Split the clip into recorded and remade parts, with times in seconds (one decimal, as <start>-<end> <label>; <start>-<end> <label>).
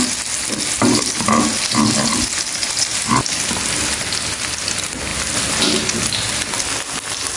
0.0-7.4 recorded